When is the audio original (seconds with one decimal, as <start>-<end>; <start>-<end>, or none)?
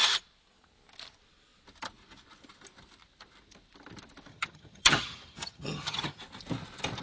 0.0-4.3; 6.2-7.0